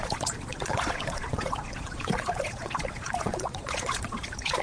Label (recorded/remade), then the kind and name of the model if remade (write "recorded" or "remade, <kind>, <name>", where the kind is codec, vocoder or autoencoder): remade, vocoder, Vocos